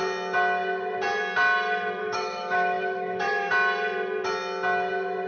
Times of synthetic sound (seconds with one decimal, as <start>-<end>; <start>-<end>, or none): 2.0-3.5